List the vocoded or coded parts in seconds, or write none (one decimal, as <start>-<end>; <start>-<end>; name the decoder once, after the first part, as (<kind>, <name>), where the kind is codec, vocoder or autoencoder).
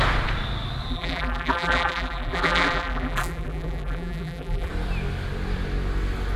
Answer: 0.9-4.7 (vocoder, BigVGAN v2)